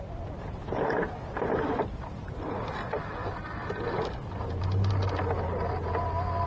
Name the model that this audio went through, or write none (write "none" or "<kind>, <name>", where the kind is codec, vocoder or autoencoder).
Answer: none